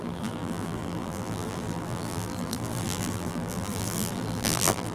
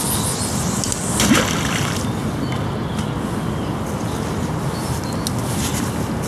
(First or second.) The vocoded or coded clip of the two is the first